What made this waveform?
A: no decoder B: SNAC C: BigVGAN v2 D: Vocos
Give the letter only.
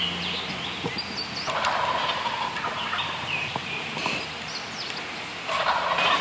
A